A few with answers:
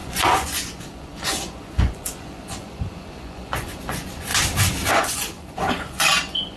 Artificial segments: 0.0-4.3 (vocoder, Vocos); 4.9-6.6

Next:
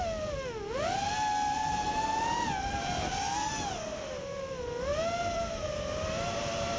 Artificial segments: 3.9-4.5 (vocoder, BigVGAN v2); 4.9-6.8

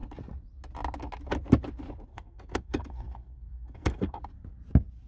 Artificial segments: 2.1-4.2 (codec, SNAC)

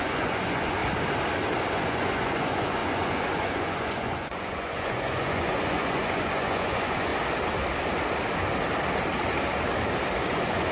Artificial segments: 0.0-0.8 (vocoder, Vocos); 1.7-7.1; 10.2-10.7

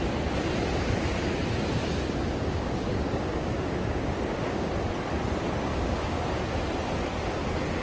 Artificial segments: 2.3-4.7 (codec, DAC); 5.7-6.4

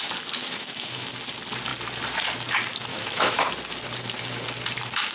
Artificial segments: 0.4-1.1 (autoencoder, DAC-VAE); 2.9-3.5

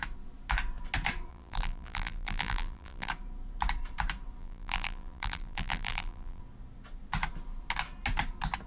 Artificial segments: 1.3-3.1 (vocoder, BigVGAN v2); 4.4-6.4